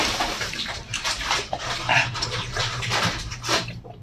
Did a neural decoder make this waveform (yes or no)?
yes